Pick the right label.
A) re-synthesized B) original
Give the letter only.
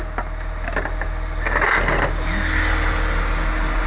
B